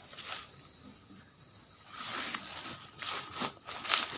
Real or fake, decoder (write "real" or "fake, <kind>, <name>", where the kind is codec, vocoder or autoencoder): real